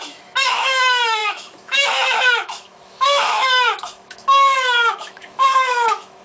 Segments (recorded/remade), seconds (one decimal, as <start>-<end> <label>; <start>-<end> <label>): 0.0-6.2 remade